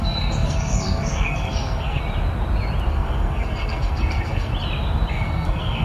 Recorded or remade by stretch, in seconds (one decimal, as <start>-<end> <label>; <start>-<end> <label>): 0.0-2.0 remade; 2.0-2.9 recorded; 2.9-4.5 remade; 4.5-5.1 recorded; 5.1-5.8 remade